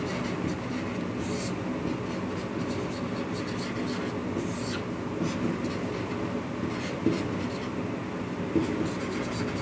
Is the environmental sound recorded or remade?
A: recorded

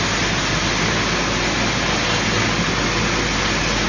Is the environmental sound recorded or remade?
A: recorded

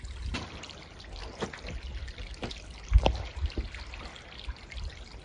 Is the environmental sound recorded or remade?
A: recorded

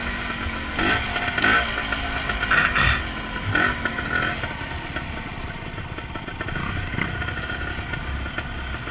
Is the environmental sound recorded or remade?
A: recorded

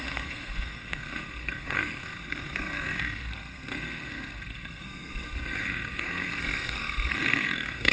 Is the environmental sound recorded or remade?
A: remade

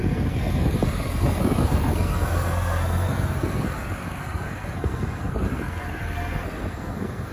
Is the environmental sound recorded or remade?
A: remade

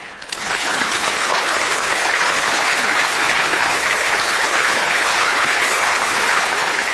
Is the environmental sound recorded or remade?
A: remade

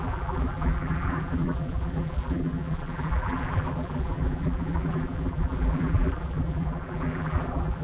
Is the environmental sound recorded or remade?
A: remade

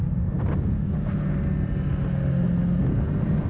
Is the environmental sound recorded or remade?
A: recorded